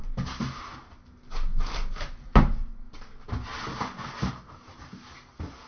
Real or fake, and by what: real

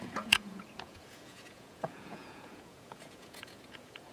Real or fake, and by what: fake, vocoder, Vocos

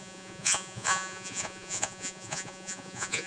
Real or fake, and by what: fake, vocoder, Vocos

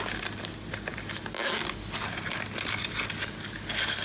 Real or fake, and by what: real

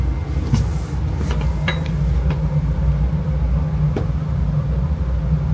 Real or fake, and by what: real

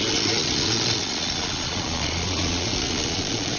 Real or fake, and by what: fake, vocoder, Vocos